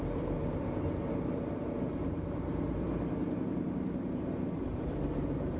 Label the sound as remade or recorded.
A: remade